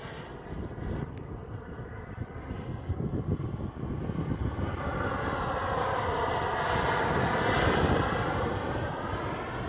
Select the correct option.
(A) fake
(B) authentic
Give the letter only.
B